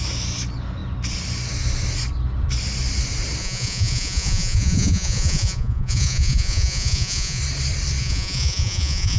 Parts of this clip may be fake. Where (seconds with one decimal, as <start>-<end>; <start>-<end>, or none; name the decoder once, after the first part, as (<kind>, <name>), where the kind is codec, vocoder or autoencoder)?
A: 3.4-7.4 (vocoder, Vocos); 8.0-9.2